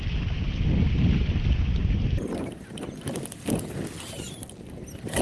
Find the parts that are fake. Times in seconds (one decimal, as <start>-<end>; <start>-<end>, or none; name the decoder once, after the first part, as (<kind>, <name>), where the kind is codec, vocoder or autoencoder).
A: 1.8-2.7 (vocoder, BigVGAN v2)